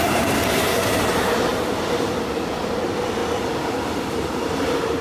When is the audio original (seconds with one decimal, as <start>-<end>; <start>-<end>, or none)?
1.5-2.6; 3.2-4.4